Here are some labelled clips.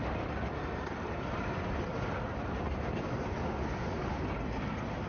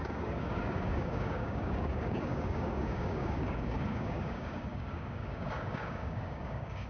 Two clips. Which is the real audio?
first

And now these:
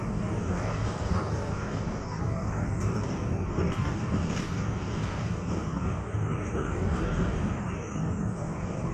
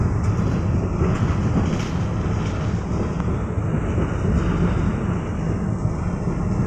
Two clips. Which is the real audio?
second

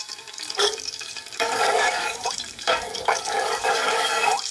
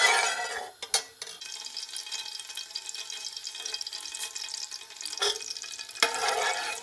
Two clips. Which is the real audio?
second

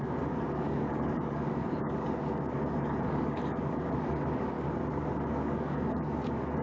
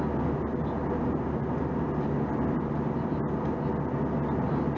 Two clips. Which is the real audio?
second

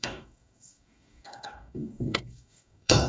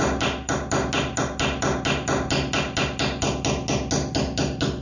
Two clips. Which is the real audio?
second